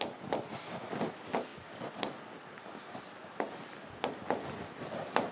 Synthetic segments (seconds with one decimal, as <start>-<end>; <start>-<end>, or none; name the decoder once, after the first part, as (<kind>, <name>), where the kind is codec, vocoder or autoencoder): none